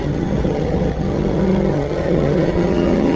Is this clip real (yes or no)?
no